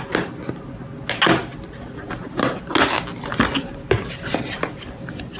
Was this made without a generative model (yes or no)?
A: yes